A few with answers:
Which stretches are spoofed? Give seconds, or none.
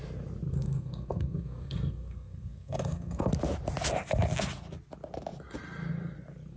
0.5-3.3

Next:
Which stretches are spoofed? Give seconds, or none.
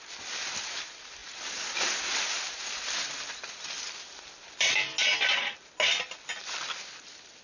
none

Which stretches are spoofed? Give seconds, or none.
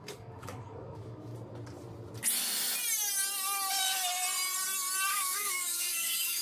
0.0-1.3; 5.1-6.4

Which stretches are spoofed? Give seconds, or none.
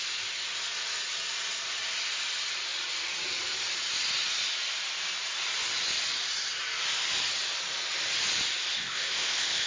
8.7-9.7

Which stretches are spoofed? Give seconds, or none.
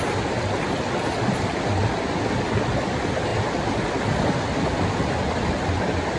none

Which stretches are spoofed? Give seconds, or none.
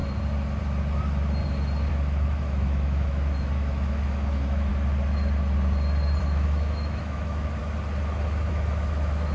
1.9-4.7; 6.2-7.6; 8.5-9.3